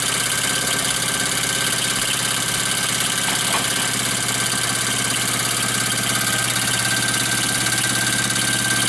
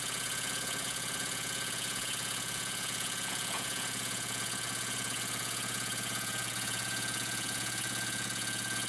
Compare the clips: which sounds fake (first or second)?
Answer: second